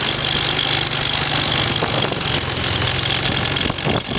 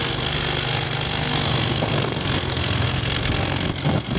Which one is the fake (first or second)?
second